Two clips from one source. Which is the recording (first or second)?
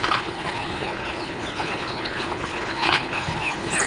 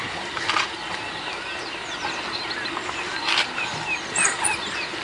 second